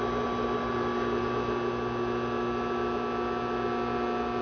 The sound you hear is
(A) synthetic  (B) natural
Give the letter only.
B